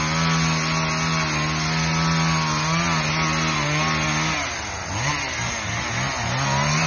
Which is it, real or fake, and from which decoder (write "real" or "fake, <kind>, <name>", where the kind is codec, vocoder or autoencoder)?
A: real